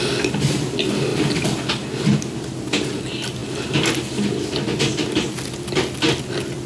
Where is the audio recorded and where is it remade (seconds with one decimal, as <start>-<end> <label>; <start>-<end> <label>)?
0.0-6.7 recorded